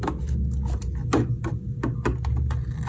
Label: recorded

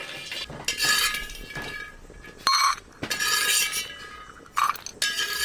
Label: recorded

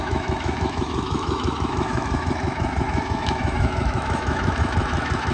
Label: remade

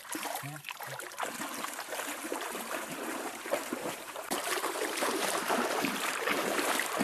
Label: remade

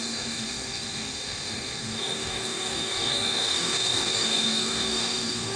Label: remade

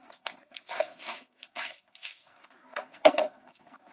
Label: remade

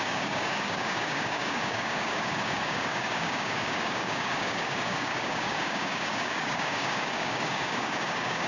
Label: remade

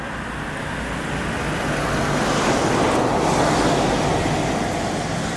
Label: recorded